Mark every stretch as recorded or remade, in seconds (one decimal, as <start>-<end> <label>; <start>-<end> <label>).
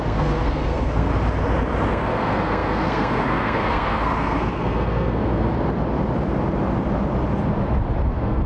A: 0.0-1.1 remade; 1.1-1.9 recorded; 1.9-5.5 remade; 5.5-8.1 recorded; 8.1-8.5 remade